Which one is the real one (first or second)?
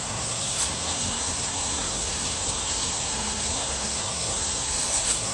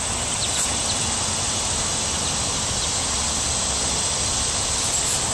second